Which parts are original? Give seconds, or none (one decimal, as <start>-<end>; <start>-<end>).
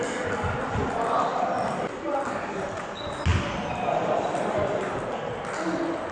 0.0-3.3; 5.2-6.1